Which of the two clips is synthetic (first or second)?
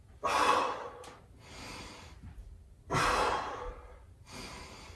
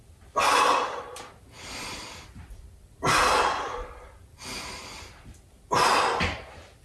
second